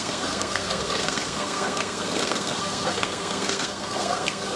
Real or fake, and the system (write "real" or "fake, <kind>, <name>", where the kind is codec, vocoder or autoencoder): fake, codec, SNAC